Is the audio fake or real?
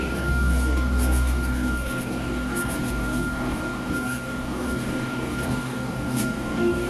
fake